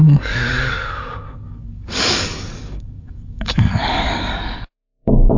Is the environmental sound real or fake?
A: fake